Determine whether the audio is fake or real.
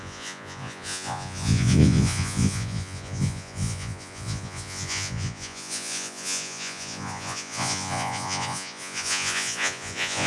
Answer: fake